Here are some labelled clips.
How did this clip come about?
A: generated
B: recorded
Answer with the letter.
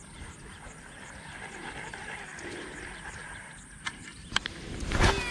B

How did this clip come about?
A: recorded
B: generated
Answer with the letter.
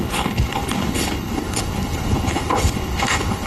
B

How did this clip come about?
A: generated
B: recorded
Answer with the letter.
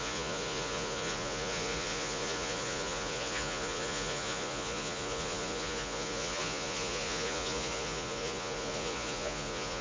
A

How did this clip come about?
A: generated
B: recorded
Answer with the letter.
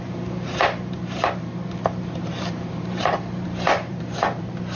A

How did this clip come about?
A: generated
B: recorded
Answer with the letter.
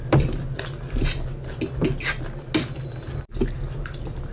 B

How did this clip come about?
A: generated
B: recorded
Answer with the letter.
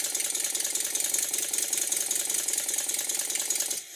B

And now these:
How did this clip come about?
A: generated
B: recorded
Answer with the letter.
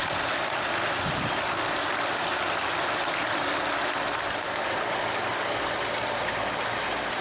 B